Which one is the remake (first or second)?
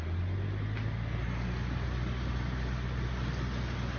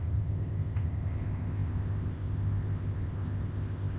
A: second